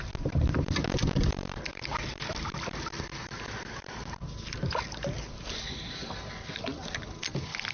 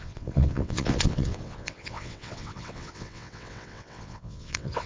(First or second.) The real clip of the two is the first